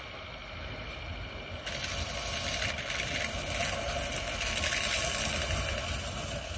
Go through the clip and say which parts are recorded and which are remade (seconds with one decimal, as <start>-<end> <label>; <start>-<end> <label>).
0.0-6.6 recorded